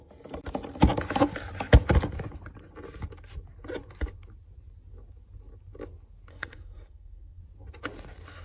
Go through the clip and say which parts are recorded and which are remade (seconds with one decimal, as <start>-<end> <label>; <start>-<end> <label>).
0.0-6.3 recorded; 6.3-7.4 remade; 7.4-8.4 recorded